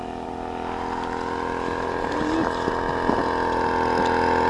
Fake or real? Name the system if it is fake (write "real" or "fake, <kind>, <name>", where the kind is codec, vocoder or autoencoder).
real